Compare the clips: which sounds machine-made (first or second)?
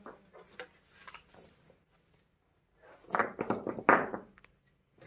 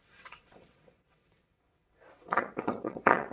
second